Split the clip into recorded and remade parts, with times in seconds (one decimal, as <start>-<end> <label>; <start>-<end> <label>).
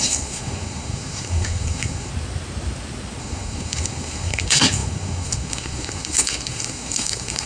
0.0-2.1 remade; 2.1-3.2 recorded; 3.2-7.5 remade